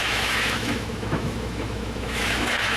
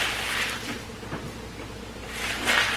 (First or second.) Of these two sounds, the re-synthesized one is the first